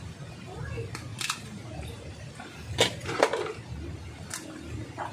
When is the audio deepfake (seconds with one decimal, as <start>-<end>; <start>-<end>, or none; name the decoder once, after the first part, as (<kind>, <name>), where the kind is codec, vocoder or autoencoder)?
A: 1.1-2.3 (vocoder, BigVGAN v2)